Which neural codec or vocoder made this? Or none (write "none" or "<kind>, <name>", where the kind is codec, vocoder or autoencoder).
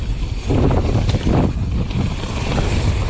none